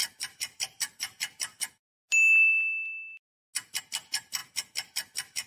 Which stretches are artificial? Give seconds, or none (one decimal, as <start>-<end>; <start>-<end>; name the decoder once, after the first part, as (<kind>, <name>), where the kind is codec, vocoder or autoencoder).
0.0-1.7 (vocoder, BigVGAN v2)